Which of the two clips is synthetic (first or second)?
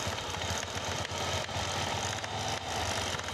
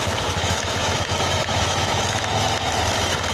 second